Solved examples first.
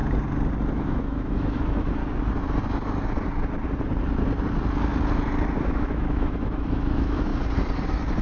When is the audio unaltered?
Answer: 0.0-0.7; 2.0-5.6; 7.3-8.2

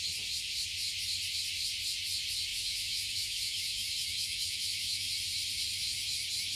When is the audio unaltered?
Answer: 0.0-2.5; 5.1-6.6

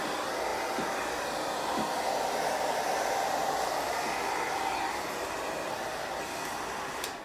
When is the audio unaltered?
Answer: 0.0-7.2

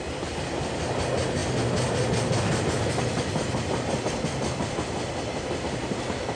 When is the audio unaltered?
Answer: 0.0-6.4

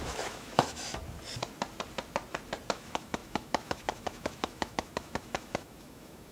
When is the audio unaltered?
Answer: 1.0-2.7

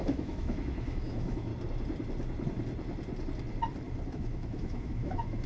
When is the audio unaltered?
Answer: 1.5-4.1